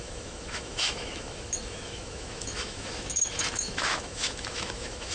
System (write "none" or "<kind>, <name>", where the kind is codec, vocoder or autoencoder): autoencoder, DAC-VAE